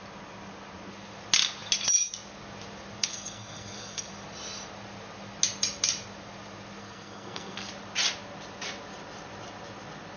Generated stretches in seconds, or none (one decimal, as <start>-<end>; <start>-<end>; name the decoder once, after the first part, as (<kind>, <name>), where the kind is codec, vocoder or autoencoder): 3.0-4.1 (codec, SNAC); 6.8-7.7